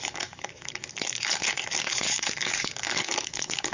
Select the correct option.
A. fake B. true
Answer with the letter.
A